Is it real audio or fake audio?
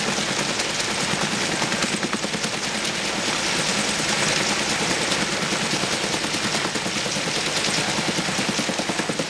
real